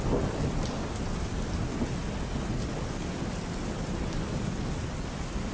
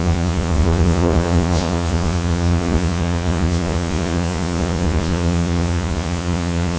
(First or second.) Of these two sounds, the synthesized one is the second